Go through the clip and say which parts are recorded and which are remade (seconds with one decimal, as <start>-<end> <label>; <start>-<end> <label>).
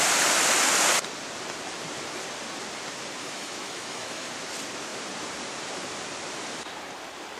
0.0-3.2 recorded; 3.2-4.3 remade; 4.3-7.4 recorded